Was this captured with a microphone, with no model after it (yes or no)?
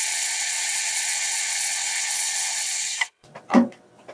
no